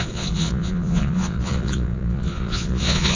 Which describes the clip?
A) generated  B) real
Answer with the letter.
A